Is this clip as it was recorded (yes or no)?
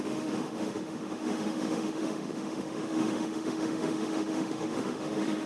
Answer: no